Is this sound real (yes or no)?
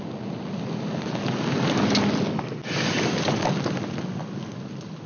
yes